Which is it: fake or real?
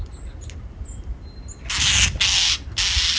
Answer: real